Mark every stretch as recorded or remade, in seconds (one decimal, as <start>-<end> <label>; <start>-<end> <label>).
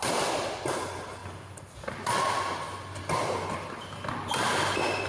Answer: 0.0-5.1 recorded